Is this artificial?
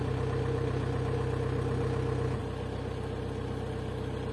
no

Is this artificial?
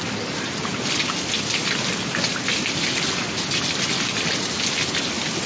no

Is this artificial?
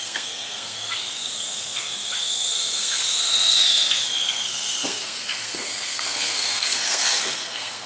yes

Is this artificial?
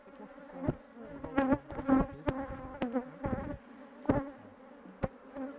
no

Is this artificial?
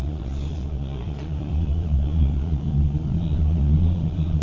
yes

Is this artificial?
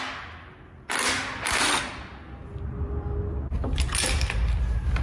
no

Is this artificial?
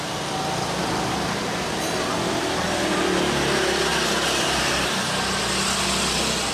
no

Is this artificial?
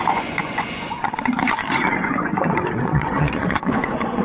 yes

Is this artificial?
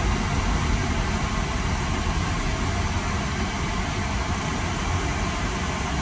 no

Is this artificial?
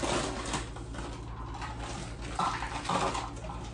no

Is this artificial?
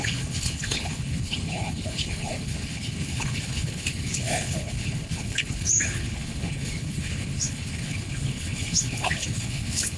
yes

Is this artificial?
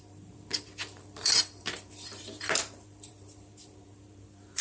yes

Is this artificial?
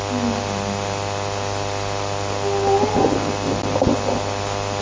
no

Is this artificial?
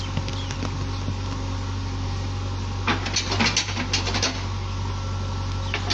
no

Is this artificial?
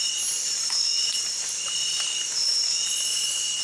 no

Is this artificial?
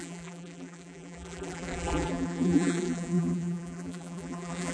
yes